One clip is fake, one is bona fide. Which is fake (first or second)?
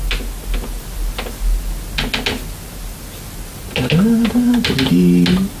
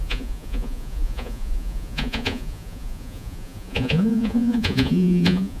second